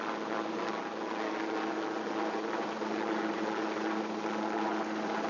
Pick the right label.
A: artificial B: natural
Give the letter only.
B